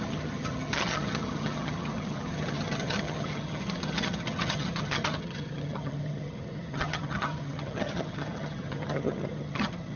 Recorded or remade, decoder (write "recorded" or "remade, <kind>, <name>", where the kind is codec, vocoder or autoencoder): remade, vocoder, HiFi-GAN